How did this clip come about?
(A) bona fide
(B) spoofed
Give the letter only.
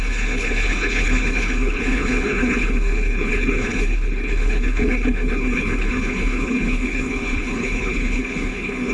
B